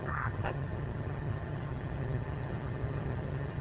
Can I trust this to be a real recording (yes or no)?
no